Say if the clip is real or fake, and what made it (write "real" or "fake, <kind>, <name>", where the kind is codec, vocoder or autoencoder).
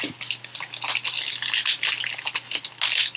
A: real